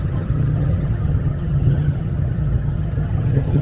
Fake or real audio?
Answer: fake